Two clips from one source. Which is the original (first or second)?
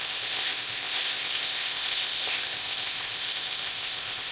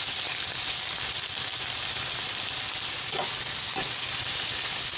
second